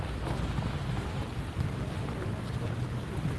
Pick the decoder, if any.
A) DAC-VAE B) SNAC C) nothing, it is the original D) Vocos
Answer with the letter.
C